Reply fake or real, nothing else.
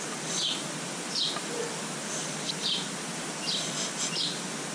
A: real